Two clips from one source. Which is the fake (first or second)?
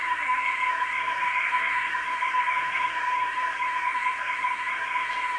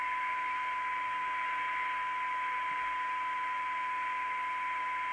first